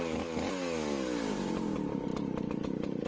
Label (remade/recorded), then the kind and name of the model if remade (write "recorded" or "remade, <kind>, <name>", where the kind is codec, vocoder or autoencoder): recorded